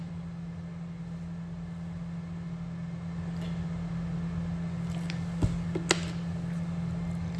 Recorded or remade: recorded